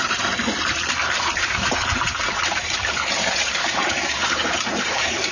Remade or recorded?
remade